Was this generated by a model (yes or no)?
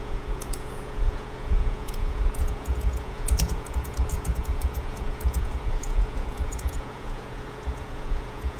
yes